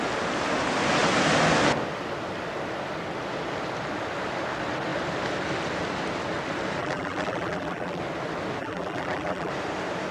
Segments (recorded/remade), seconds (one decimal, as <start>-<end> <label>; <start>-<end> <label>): 0.0-6.8 recorded; 6.8-8.0 remade; 8.0-8.6 recorded; 8.6-9.5 remade; 9.5-10.1 recorded